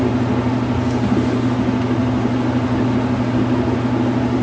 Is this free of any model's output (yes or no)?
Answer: yes